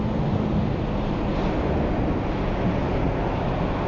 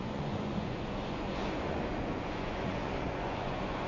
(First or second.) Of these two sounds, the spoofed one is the second